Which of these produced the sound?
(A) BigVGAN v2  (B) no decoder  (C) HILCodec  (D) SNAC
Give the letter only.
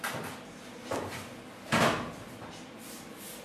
B